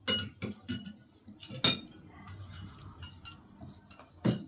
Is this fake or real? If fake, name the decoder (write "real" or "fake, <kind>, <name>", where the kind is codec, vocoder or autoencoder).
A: real